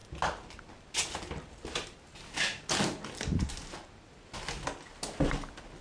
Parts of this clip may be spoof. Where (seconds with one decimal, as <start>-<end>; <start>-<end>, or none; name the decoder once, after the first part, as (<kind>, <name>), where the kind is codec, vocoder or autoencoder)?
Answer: none